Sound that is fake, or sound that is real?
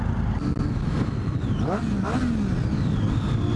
real